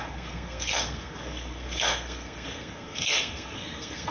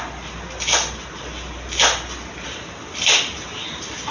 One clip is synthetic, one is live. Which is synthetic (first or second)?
first